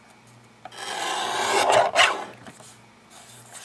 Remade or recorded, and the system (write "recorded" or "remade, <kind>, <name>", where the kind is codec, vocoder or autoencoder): recorded